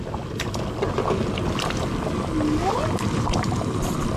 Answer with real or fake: real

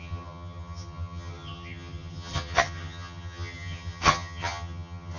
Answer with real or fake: fake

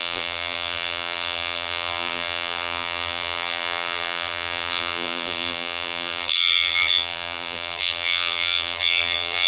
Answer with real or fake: fake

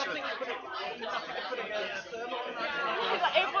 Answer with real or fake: real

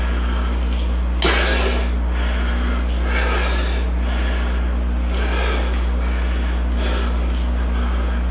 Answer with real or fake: real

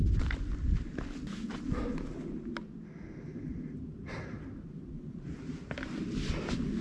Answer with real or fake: real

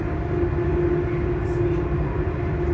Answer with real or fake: real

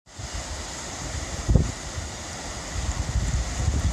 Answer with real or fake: real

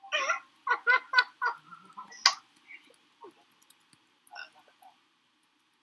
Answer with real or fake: real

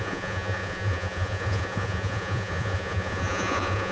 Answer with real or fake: fake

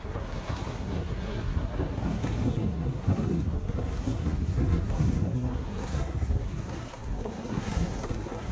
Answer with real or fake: fake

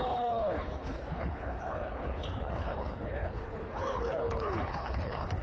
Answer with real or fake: fake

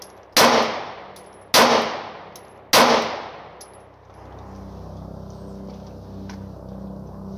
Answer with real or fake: real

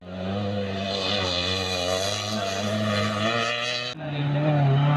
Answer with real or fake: real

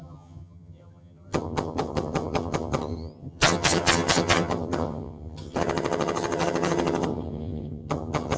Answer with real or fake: fake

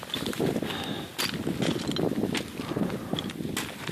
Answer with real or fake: real